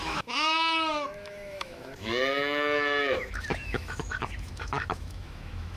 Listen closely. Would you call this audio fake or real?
fake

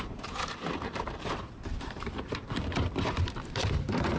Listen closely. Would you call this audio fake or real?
fake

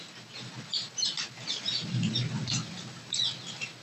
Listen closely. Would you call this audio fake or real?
real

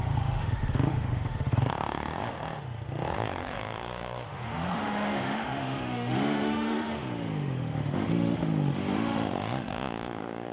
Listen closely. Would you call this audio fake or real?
fake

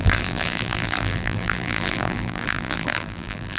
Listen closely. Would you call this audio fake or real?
fake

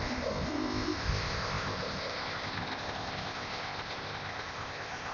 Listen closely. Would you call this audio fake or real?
fake